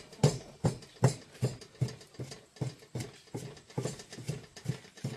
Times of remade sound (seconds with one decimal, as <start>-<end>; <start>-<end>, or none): none